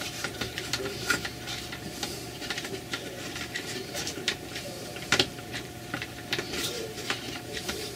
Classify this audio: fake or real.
fake